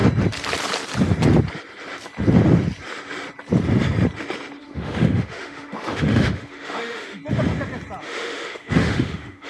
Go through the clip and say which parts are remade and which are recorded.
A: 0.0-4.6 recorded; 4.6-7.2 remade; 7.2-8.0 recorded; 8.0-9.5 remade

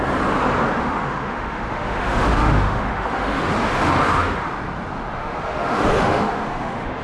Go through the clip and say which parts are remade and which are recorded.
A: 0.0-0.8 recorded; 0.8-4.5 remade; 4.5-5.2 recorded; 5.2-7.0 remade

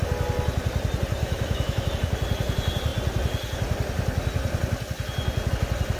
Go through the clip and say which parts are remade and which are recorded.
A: 0.0-1.2 recorded; 1.2-1.9 remade; 1.9-6.0 recorded